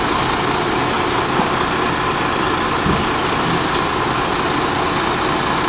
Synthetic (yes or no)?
no